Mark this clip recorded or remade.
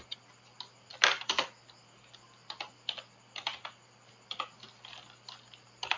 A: recorded